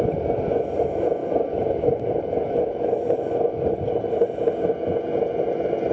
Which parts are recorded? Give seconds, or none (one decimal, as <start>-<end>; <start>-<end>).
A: 0.0-5.9